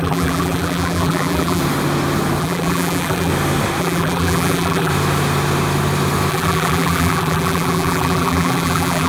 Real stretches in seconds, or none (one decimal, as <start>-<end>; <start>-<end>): 1.6-2.4; 3.3-3.8; 4.9-6.3